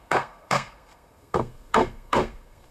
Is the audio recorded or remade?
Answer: remade